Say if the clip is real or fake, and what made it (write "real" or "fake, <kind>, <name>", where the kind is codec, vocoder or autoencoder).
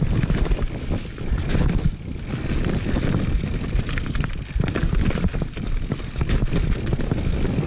real